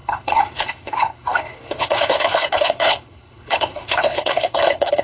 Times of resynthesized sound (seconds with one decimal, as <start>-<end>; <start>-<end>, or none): 0.0-5.0